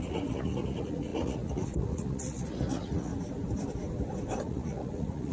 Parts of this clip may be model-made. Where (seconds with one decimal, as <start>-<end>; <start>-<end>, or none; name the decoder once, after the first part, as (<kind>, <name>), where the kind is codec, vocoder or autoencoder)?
0.0-3.1 (vocoder, Vocos); 4.4-5.3